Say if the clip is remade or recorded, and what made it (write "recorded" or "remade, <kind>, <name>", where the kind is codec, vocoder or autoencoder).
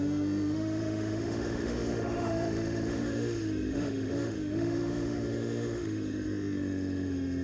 remade, autoencoder, DAC-VAE